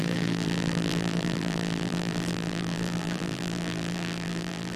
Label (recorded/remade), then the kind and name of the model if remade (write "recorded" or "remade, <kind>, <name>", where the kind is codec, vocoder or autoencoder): remade, vocoder, BigVGAN v2